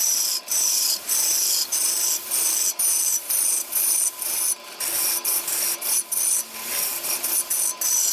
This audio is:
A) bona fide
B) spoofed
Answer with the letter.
A